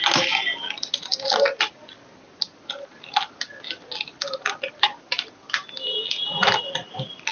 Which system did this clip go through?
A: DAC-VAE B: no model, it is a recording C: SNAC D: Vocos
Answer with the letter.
B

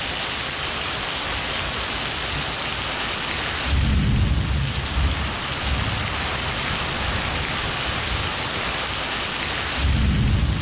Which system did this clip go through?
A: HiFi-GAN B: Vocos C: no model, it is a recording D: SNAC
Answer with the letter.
C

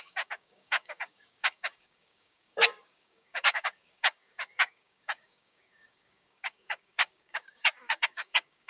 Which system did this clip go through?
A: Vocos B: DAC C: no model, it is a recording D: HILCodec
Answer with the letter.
B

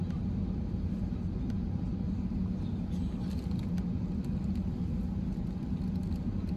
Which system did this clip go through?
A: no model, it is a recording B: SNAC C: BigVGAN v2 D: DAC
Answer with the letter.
A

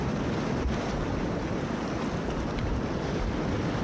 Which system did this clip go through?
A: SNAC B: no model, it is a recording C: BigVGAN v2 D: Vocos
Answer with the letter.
B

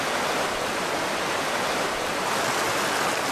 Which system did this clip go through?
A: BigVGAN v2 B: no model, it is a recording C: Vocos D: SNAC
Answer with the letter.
B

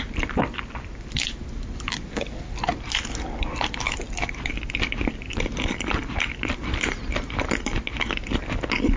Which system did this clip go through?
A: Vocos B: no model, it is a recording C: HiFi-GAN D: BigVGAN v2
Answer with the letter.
B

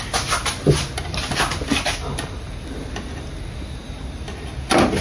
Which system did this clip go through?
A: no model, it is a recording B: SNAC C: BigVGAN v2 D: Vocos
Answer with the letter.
A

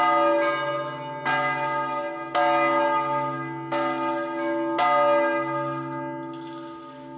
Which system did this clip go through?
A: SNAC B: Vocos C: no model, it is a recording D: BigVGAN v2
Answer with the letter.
C